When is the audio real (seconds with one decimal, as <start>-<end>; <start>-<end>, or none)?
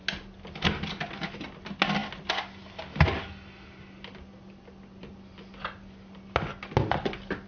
0.0-7.5